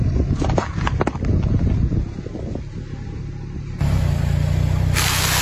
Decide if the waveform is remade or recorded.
recorded